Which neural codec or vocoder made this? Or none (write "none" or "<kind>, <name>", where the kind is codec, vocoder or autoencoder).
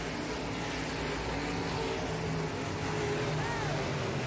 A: none